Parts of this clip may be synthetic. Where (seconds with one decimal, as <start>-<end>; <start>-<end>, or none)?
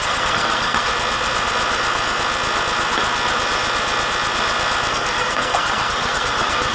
0.0-0.9; 4.9-6.7